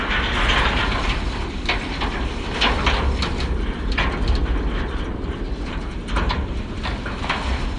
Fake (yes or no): no